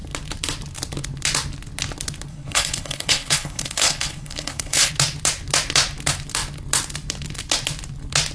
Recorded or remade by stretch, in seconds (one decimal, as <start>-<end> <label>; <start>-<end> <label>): 0.0-2.3 recorded; 2.3-4.9 remade; 4.9-8.3 recorded